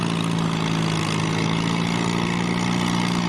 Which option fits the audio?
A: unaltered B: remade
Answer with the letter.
A